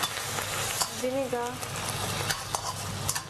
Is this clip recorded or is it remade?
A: recorded